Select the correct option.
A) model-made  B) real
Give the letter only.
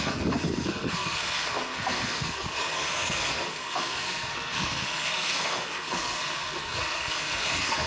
A